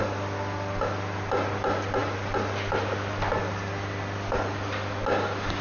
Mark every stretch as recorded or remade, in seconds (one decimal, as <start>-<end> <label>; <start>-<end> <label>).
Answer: 0.0-5.6 recorded